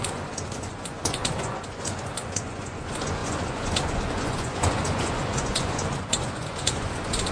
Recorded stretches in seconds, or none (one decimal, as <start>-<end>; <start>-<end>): none